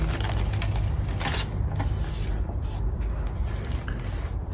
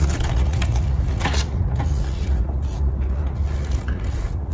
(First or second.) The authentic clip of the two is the first